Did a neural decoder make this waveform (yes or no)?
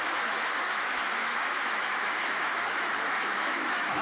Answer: yes